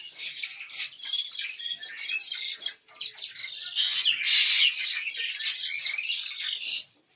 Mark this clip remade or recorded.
recorded